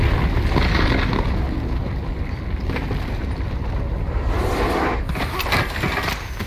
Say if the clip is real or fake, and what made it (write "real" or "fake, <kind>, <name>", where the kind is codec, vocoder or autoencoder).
real